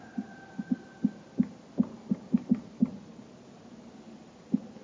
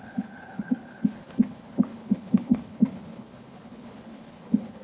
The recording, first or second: first